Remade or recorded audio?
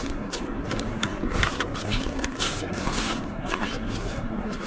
remade